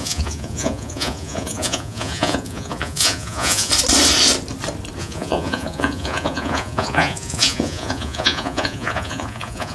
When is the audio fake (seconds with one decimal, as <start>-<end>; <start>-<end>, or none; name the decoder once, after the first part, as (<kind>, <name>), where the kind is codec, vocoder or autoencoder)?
0.0-3.7 (vocoder, Vocos); 5.0-9.7